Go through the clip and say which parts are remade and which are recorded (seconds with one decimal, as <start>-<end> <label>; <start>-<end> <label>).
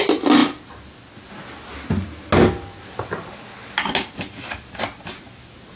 0.0-5.8 recorded